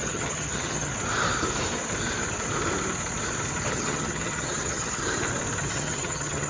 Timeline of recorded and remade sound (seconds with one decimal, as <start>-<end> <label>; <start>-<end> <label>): 0.0-0.9 remade; 0.9-3.7 recorded; 3.7-5.0 remade; 5.0-5.7 recorded; 5.7-6.5 remade